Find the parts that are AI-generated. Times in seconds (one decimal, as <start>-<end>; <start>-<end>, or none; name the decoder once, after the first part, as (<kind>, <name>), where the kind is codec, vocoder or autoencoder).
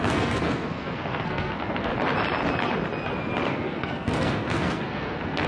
0.0-1.9 (codec, SNAC); 3.5-5.5